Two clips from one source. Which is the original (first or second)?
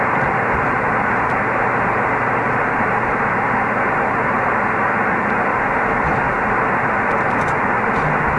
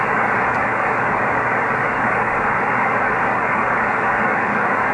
first